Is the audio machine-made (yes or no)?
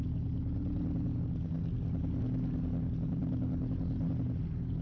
no